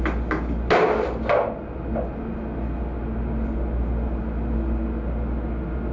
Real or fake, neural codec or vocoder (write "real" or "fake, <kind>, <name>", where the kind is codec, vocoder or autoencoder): real